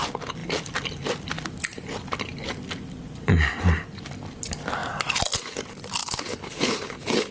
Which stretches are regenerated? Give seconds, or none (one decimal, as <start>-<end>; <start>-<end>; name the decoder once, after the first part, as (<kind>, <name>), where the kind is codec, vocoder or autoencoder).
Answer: 6.0-7.3 (codec, HILCodec)